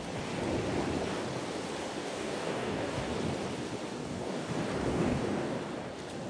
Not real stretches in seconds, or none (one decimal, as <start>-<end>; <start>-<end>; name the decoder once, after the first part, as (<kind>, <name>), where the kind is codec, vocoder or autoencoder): 2.0-3.0 (codec, DAC); 3.9-4.5; 4.9-5.6